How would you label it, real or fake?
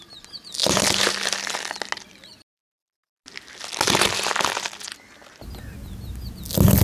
real